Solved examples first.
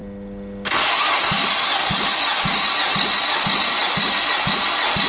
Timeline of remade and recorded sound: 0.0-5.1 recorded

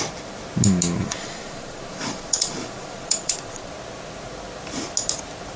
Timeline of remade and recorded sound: 0.0-1.0 recorded; 1.0-3.7 remade; 3.7-5.6 recorded